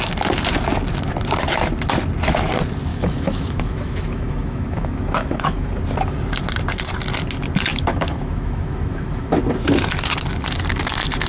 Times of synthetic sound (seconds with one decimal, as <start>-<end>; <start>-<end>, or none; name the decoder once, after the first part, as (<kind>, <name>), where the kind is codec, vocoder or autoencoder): 2.9-5.7 (autoencoder, DAC-VAE); 7.7-9.3